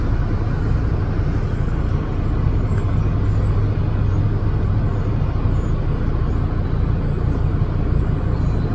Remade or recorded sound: recorded